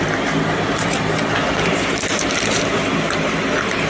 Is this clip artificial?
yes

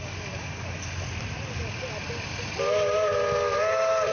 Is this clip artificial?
no